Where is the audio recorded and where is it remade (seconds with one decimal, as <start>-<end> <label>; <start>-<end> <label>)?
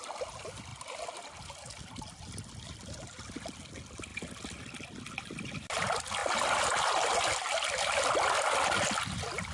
0.0-9.5 recorded